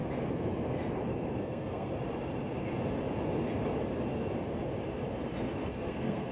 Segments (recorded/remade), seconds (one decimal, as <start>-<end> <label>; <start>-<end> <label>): 0.0-1.4 recorded; 1.4-1.9 remade; 1.9-5.7 recorded; 5.7-6.3 remade